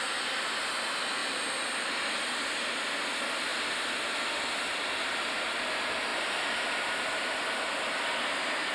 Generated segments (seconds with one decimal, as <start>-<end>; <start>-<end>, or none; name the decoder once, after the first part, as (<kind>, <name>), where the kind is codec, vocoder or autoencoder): 1.2-1.9 (vocoder, BigVGAN v2); 6.1-7.1